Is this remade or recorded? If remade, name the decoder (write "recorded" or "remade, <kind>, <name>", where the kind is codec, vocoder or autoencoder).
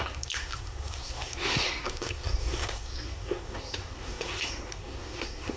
remade, codec, SNAC